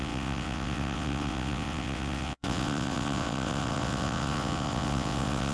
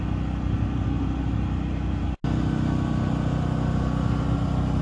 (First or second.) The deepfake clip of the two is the first